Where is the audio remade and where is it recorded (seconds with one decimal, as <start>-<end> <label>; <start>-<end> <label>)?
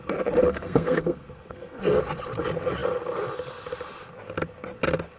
0.0-0.4 recorded; 0.4-1.8 remade; 1.8-5.2 recorded